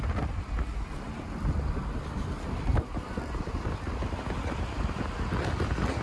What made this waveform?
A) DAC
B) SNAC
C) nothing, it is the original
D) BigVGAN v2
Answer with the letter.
C